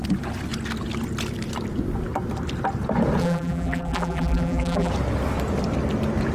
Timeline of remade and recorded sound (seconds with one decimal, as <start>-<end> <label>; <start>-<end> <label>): 0.0-3.2 recorded; 3.2-4.9 remade; 4.9-6.3 recorded